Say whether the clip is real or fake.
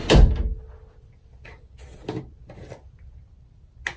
real